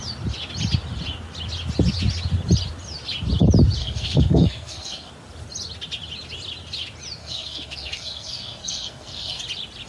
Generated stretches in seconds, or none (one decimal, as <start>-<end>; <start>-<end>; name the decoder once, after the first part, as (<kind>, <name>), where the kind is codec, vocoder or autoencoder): 3.8-5.1 (codec, SNAC); 7.2-9.4